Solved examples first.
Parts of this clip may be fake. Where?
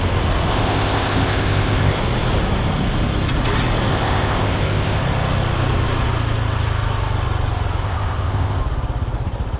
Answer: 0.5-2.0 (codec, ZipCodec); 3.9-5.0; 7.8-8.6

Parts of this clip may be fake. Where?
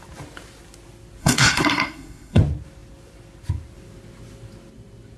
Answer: 1.2-2.4 (codec, SNAC)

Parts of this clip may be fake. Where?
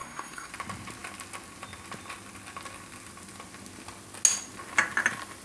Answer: 0.0-0.5 (codec, SNAC)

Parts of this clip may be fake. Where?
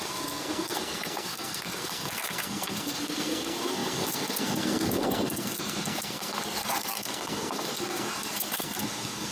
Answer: 0.0-9.3 (codec, SNAC)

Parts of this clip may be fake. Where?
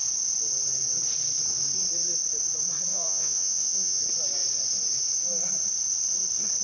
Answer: 2.9-4.0 (vocoder, Vocos)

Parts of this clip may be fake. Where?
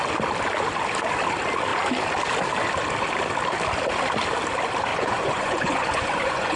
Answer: 4.9-6.6 (vocoder, Vocos)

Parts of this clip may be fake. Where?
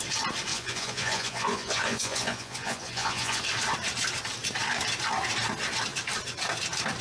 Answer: 0.5-3.4 (vocoder, Vocos)